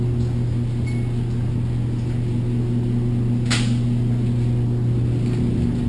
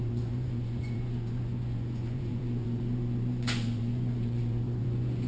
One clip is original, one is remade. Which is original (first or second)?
first